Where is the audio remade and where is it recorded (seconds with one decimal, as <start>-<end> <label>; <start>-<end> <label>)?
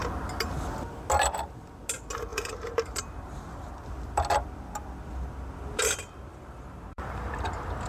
0.0-2.3 recorded; 2.3-3.7 remade; 3.7-6.3 recorded; 6.3-7.3 remade; 7.3-7.9 recorded